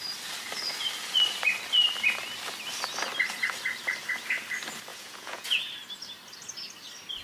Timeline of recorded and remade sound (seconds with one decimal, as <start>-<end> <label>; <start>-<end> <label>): 0.0-4.9 recorded; 4.9-5.6 remade; 5.6-7.2 recorded